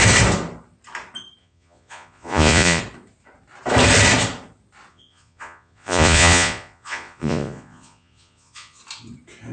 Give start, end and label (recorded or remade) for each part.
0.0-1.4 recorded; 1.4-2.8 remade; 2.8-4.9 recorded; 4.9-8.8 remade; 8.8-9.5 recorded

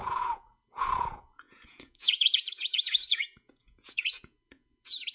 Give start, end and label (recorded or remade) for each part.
0.0-5.1 remade

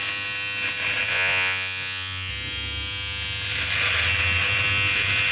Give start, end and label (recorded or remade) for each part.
0.0-1.1 recorded; 1.1-2.3 remade; 2.3-5.3 recorded

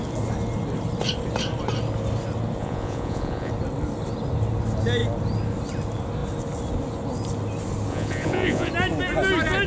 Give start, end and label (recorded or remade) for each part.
0.0-2.6 recorded; 2.6-3.5 remade; 3.5-7.9 recorded; 7.9-8.7 remade; 8.7-9.7 recorded

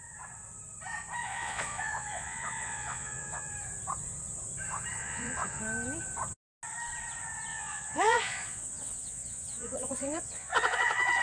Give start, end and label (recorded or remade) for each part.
0.0-1.2 recorded; 1.2-3.5 remade; 3.5-5.0 recorded; 5.0-5.6 remade; 5.6-7.5 recorded; 7.5-11.2 remade

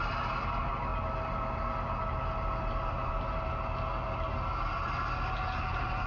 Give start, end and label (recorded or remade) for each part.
0.0-6.1 recorded

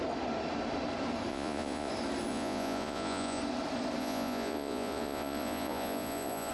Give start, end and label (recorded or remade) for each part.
0.0-1.3 recorded; 1.3-1.9 remade; 1.9-2.3 recorded; 2.3-3.4 remade; 3.4-4.0 recorded; 4.0-6.5 remade

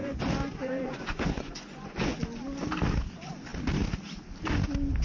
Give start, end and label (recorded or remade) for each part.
0.0-2.2 remade; 2.2-5.0 recorded